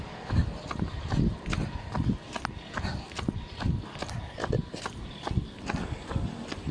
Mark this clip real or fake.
real